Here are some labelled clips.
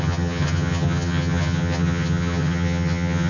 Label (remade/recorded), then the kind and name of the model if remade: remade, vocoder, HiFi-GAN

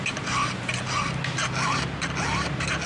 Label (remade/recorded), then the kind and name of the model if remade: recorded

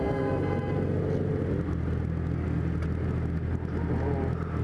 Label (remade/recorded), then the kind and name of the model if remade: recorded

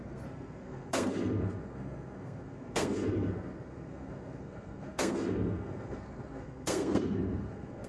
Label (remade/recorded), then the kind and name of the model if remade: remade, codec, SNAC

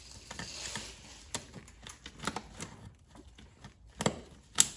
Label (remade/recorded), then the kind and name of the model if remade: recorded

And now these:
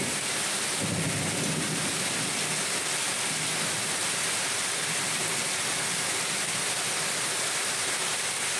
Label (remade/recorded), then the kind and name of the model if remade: recorded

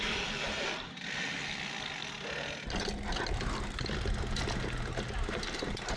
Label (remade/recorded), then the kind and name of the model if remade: recorded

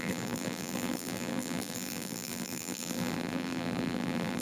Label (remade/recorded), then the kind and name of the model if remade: remade, vocoder, BigVGAN v2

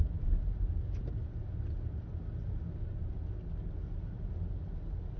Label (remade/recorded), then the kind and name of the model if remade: recorded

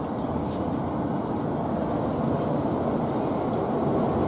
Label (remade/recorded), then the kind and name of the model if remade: recorded